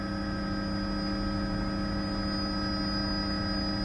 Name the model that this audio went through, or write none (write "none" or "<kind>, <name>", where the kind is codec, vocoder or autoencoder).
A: none